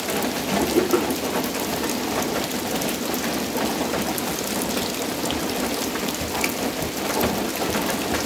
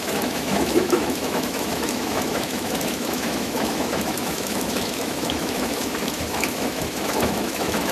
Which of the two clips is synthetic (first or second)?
second